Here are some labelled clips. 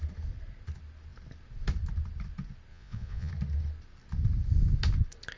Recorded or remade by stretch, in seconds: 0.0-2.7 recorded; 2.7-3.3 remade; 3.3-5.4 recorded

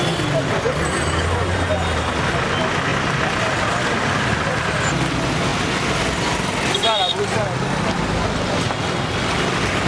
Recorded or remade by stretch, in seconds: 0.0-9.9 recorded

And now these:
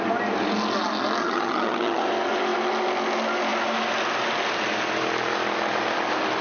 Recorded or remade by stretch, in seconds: 0.0-1.2 recorded; 1.2-2.0 remade; 2.0-6.4 recorded

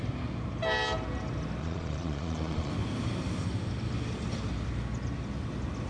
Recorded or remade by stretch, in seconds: 0.0-1.6 recorded; 1.6-2.7 remade; 2.7-5.9 recorded

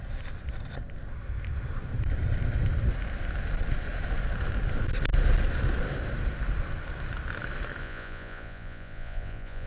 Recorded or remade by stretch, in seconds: 0.0-7.8 recorded; 7.8-9.7 remade